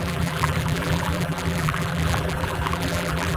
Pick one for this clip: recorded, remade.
remade